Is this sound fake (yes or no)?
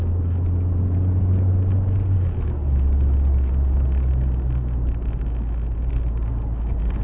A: no